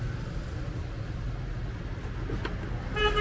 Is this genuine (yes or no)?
yes